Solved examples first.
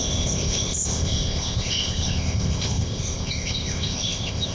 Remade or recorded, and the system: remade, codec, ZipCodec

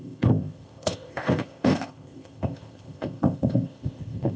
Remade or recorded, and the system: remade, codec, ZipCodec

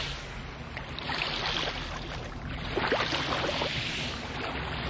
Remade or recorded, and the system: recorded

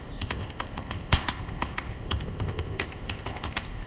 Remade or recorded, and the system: remade, codec, ZipCodec